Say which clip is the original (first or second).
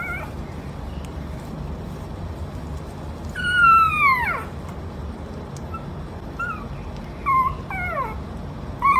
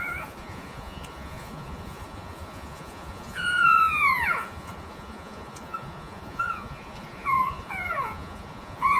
first